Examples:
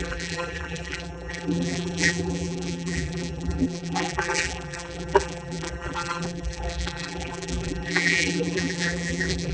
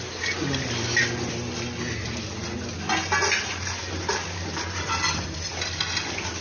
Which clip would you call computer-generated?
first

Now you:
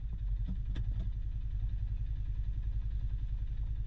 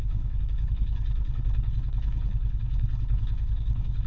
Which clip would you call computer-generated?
second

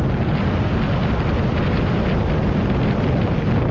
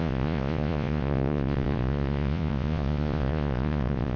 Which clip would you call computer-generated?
second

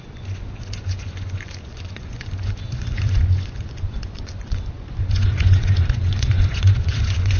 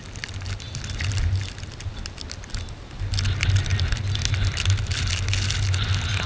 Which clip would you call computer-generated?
first